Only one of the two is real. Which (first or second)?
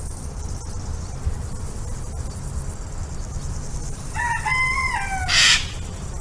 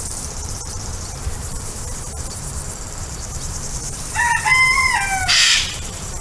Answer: first